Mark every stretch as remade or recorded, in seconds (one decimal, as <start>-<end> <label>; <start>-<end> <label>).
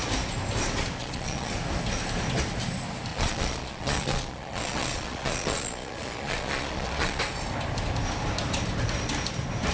0.0-1.0 recorded; 1.0-1.5 remade; 1.5-3.1 recorded; 3.1-7.2 remade; 7.2-9.7 recorded